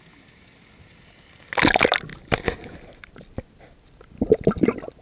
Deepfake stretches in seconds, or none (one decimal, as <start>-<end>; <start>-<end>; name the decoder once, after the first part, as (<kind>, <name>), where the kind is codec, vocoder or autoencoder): none